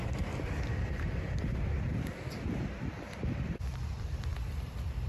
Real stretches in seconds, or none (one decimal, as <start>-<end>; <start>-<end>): 0.0-3.1